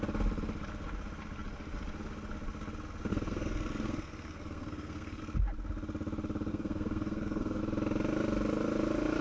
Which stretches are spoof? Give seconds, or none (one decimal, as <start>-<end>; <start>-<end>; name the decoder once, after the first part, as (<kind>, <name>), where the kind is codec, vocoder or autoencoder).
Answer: 3.1-5.2 (codec, SNAC); 6.5-7.6